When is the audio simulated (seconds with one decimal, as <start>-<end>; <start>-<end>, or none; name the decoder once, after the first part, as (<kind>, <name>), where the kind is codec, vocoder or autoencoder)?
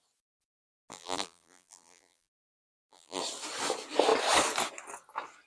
0.9-3.2 (vocoder, BigVGAN v2)